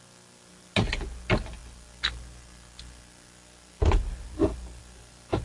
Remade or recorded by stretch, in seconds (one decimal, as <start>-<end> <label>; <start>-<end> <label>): 0.0-5.4 recorded